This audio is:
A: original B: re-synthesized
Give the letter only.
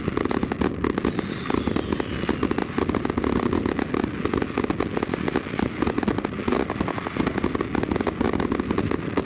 A